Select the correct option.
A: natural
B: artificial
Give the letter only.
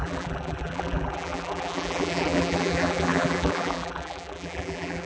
B